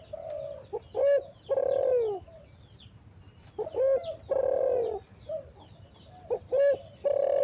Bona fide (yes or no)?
yes